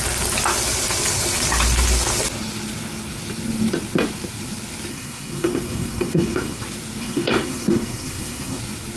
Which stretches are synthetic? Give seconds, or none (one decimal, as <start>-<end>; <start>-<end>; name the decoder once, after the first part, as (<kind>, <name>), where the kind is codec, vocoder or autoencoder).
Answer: 4.9-6.6 (codec, SNAC); 7.0-8.6

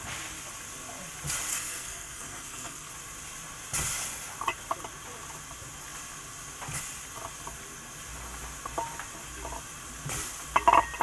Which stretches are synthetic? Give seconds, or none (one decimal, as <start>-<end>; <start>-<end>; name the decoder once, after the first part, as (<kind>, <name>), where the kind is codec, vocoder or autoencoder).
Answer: 1.5-2.9 (codec, SNAC)

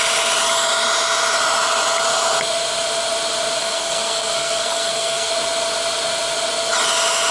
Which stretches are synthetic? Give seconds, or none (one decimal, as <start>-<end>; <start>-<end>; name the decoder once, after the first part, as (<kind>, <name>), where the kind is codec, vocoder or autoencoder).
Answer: 3.6-5.3 (codec, SNAC)

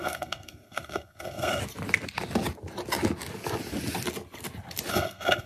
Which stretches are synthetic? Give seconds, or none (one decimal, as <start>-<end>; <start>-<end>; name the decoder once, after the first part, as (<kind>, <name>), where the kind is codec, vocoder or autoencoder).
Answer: 0.0-1.6 (codec, SNAC); 4.9-5.5

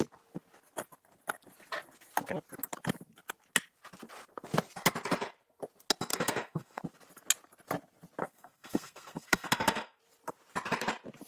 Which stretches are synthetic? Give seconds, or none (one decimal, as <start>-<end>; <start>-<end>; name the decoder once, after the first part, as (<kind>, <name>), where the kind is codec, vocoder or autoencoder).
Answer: 6.1-6.8 (codec, SNAC); 8.2-10.0

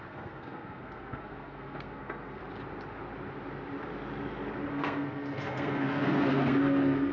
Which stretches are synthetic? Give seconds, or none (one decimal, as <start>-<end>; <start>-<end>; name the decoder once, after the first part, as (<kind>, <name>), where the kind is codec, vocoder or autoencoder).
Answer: 0.0-2.4 (codec, SNAC); 4.7-7.1

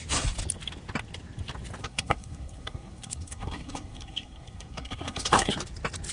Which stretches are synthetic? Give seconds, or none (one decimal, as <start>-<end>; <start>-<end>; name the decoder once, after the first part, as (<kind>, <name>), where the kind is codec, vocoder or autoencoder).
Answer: 1.8-5.5 (codec, SNAC)

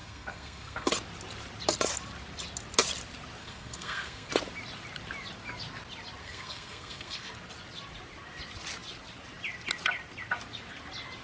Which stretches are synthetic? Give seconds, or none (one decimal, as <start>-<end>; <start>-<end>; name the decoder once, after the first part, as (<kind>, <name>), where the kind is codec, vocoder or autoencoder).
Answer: 0.0-0.9 (codec, SNAC); 3.4-4.3; 6.2-7.3